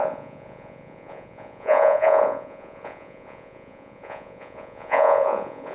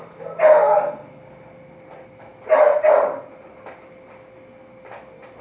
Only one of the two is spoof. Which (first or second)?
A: first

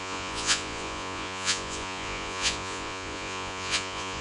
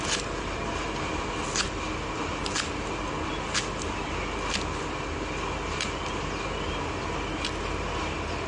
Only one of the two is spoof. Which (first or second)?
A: first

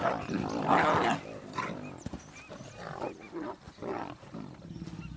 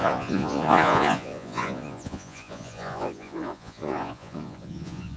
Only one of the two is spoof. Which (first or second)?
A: second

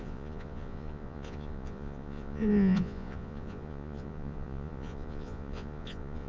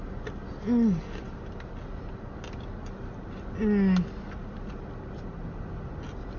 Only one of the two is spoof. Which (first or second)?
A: first